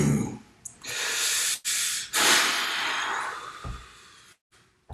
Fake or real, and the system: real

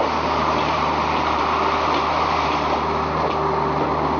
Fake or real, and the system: fake, vocoder, BigVGAN v2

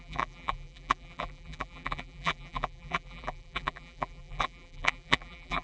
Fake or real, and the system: fake, vocoder, BigVGAN v2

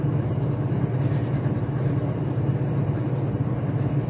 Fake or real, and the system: real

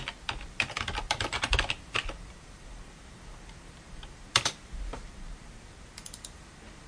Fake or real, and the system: fake, vocoder, BigVGAN v2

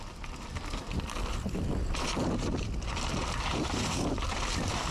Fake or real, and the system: real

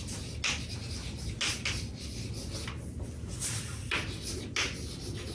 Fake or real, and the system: real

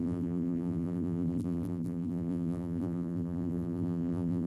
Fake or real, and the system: fake, vocoder, BigVGAN v2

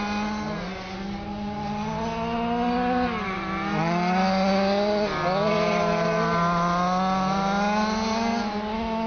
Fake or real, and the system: real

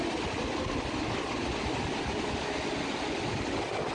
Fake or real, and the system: real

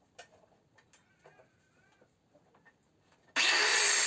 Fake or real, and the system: real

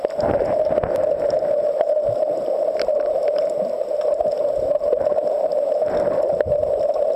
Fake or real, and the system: real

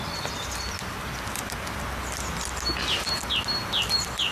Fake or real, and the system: real